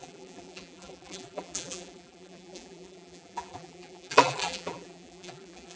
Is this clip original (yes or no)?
no